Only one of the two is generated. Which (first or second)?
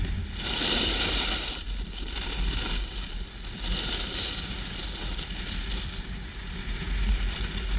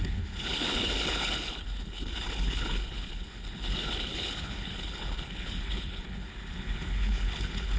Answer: second